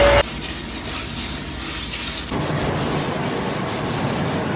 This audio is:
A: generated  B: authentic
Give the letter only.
B